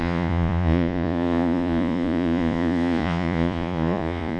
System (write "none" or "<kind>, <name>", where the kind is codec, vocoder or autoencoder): vocoder, Vocos